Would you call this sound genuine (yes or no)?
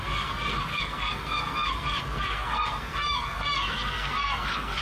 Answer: no